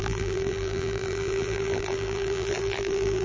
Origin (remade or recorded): remade